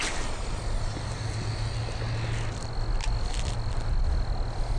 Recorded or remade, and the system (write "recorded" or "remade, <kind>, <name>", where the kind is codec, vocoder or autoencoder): recorded